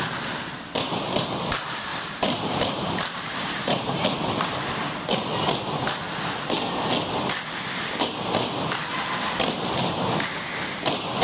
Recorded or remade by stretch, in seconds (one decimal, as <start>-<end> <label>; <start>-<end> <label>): 0.0-1.9 recorded; 1.9-4.0 remade; 4.0-11.2 recorded